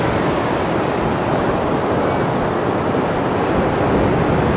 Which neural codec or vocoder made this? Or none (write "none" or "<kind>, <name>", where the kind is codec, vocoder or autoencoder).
none